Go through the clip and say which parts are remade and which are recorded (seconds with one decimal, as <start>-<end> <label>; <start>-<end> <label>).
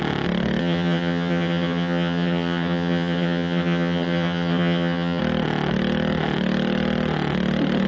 0.0-0.6 recorded; 0.6-5.2 remade; 5.2-7.9 recorded